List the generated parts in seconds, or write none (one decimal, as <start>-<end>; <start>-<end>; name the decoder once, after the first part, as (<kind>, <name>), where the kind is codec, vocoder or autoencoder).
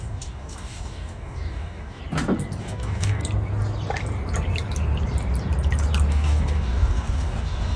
0.0-2.0 (codec, DAC); 2.6-3.2; 6.1-7.8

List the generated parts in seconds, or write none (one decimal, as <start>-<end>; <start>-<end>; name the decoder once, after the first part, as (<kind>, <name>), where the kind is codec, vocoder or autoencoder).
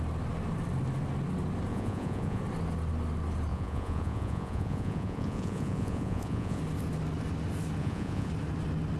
1.7-2.4 (vocoder, Vocos); 3.5-6.6; 7.8-8.3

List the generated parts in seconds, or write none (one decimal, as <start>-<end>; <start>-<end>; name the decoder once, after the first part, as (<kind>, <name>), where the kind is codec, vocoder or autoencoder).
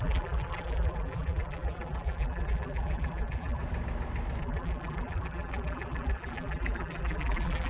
0.0-3.6 (vocoder, BigVGAN v2); 4.4-7.7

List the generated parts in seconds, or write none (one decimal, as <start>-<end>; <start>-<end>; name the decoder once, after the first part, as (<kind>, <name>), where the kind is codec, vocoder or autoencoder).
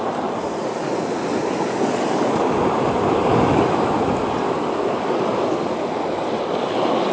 3.3-3.9 (autoencoder, DAC-VAE)